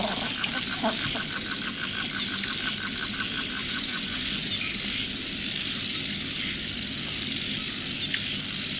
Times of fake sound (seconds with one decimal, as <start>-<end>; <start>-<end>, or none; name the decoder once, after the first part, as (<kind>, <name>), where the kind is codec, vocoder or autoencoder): 3.6-4.5 (vocoder, Vocos)